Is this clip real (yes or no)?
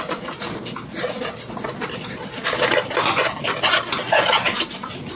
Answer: yes